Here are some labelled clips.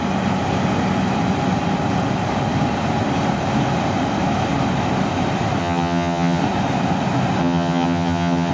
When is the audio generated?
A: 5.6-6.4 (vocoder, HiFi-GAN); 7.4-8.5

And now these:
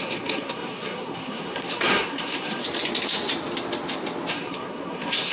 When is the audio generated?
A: 0.0-2.6 (codec, SNAC); 4.3-5.3

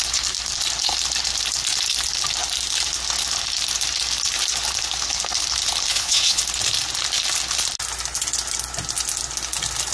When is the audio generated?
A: 5.9-6.4 (vocoder, Vocos)